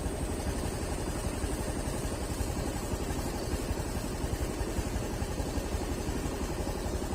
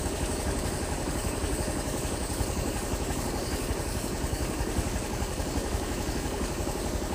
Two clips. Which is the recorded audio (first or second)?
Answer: first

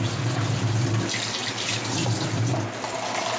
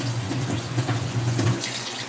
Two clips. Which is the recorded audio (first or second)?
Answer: first